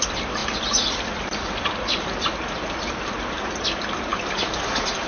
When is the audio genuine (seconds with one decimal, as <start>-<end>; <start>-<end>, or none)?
0.0-5.1